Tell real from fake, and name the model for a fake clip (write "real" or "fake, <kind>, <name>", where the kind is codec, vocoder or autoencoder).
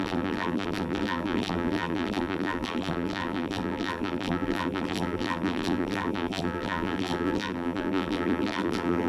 fake, vocoder, BigVGAN v2